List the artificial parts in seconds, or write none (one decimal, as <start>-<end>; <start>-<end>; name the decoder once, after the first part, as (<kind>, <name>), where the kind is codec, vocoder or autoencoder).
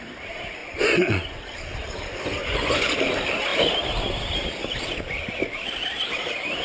0.6-1.4 (vocoder, Vocos); 2.4-2.9